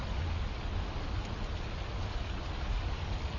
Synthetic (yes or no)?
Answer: no